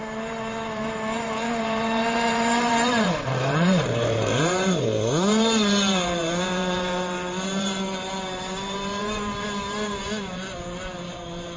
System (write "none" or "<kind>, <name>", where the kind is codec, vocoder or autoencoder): vocoder, BigVGAN v2